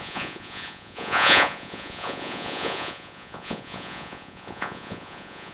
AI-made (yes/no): yes